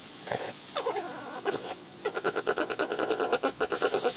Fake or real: fake